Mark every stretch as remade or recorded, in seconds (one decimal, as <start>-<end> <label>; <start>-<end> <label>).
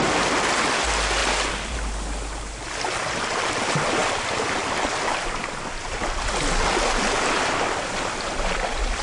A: 0.0-9.0 recorded